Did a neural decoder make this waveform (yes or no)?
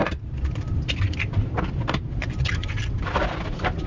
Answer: no